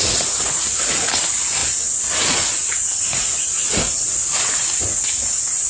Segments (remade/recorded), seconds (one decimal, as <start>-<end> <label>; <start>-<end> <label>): 0.0-1.6 remade; 1.6-2.3 recorded; 2.3-5.7 remade